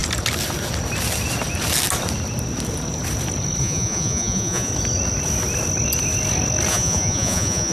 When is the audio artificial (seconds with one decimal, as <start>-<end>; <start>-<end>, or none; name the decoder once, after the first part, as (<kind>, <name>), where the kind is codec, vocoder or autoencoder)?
3.6-4.7 (vocoder, Vocos); 6.7-7.7